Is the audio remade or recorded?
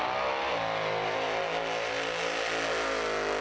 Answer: recorded